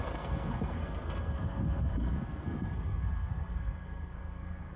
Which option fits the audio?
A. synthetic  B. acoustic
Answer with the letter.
A